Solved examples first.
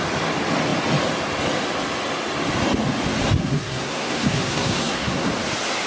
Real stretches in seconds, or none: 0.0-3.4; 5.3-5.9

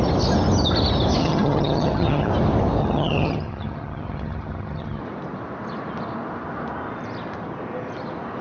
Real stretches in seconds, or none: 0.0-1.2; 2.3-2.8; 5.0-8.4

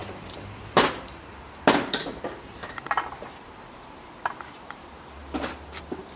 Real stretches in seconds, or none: 5.2-5.8

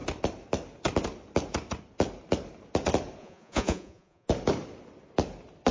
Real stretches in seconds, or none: 0.0-3.2; 4.3-5.7